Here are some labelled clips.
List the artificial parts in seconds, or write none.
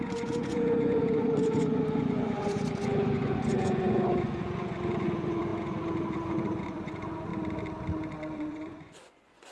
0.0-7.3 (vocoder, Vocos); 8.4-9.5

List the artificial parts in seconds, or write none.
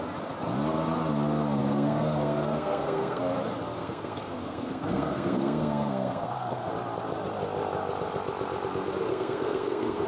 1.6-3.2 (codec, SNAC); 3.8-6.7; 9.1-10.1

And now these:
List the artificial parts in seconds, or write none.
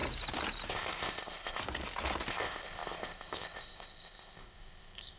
0.7-1.6 (codec, ZipCodec); 2.3-5.2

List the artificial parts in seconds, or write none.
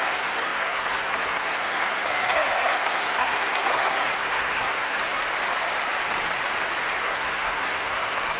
0.0-5.2 (codec, SNAC); 7.0-8.4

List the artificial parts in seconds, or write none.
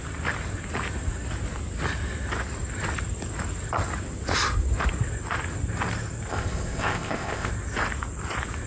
6.3-7.5 (codec, ZipCodec)